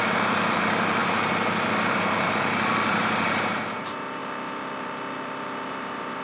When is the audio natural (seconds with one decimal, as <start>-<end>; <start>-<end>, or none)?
1.0-1.9; 4.2-5.7